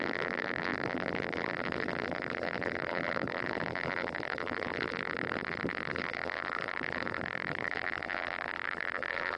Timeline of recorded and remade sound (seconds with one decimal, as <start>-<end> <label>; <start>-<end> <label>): 0.0-9.4 remade

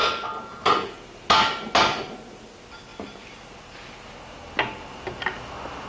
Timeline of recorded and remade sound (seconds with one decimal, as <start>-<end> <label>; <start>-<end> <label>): 0.0-5.9 recorded

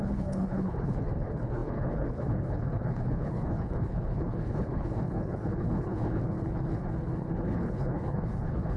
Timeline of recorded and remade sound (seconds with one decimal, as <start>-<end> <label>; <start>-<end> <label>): 0.0-8.8 remade